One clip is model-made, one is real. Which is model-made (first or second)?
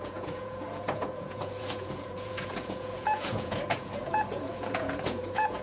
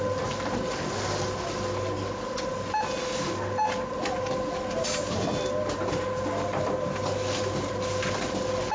first